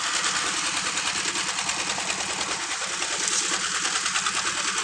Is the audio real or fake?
real